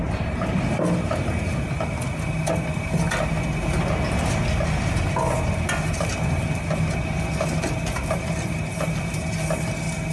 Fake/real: real